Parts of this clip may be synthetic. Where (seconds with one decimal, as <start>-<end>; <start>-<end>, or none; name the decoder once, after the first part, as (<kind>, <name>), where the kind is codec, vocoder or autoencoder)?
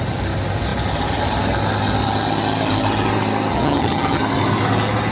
3.5-4.2 (vocoder, HiFi-GAN)